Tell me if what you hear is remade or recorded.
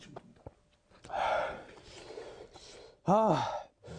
recorded